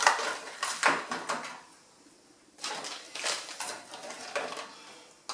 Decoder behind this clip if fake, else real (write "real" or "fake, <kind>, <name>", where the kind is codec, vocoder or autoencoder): real